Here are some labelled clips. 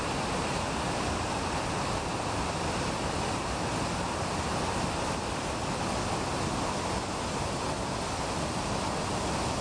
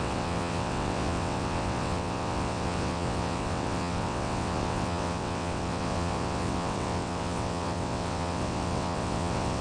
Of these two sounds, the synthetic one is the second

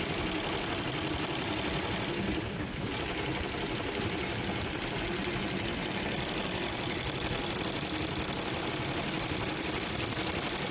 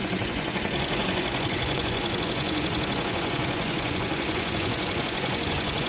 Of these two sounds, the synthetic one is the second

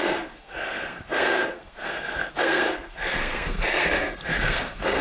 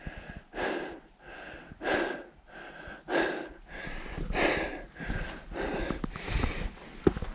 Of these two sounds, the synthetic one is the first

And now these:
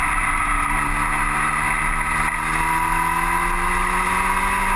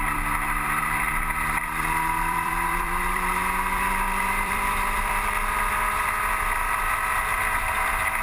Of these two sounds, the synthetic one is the second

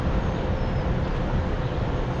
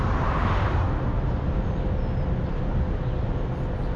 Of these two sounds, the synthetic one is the first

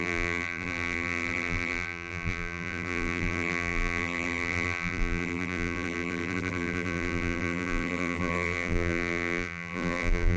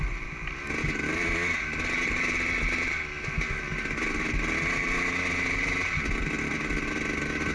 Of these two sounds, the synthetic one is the first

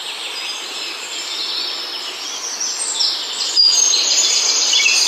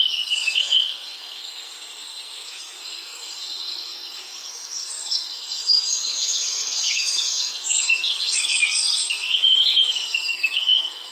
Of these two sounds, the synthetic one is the second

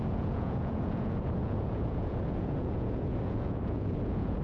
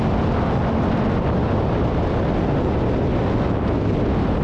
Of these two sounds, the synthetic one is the first